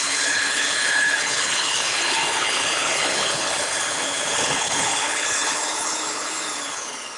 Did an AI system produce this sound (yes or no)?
yes